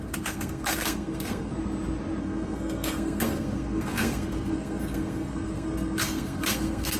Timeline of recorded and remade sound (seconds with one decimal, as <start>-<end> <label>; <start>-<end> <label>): 0.0-1.5 remade; 1.5-2.2 recorded; 2.2-7.0 remade